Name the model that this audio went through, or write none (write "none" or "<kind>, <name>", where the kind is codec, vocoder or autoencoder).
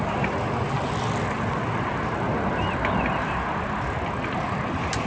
none